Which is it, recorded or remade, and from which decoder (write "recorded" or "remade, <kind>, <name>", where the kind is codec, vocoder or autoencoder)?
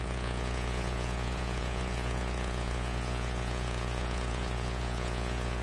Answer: remade, vocoder, Vocos